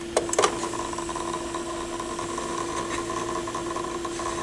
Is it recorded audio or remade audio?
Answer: recorded